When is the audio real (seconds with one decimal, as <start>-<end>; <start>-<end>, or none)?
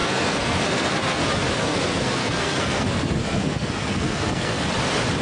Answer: 1.2-1.6; 4.7-5.2